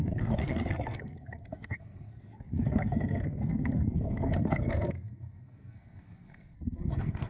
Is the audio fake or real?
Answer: fake